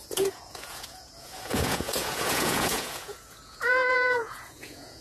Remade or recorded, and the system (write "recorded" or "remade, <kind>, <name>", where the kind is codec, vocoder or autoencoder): remade, vocoder, Vocos